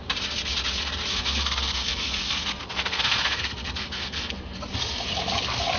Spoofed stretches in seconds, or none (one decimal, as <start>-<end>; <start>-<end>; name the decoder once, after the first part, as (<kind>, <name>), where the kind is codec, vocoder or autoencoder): 1.1-4.6 (codec, SNAC)